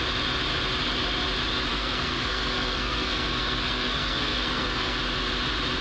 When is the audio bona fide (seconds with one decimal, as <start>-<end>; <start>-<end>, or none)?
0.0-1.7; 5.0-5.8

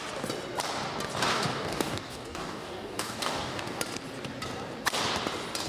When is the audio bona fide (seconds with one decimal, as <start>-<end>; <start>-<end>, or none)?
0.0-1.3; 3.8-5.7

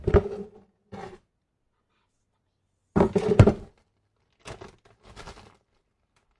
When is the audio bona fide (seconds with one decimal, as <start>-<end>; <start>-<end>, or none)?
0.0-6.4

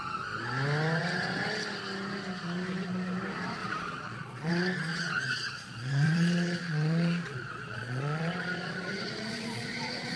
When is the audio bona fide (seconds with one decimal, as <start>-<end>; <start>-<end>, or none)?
0.0-3.6; 4.5-4.9

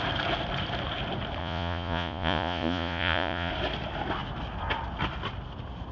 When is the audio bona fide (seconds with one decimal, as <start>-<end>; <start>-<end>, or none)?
0.0-1.4; 3.5-5.9

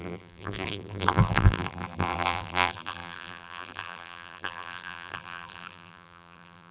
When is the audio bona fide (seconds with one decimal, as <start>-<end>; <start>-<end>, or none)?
none

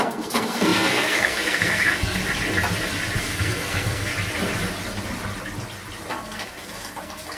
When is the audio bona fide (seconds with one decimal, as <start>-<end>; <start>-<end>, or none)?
2.2-3.2; 4.1-6.1